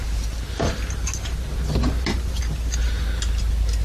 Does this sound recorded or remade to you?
recorded